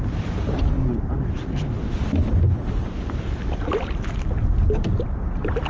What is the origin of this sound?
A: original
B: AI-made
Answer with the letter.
A